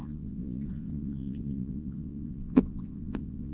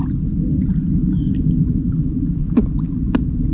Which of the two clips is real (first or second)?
second